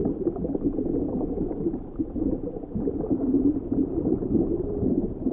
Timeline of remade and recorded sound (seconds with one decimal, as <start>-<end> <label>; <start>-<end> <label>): 0.0-5.3 remade